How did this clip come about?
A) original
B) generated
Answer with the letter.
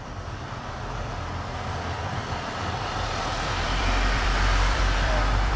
B